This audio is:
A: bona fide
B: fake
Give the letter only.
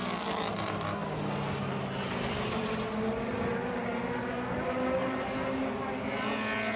A